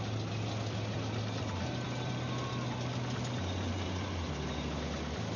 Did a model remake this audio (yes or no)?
no